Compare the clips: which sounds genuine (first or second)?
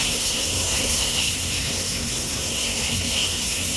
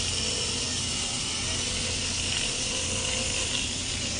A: second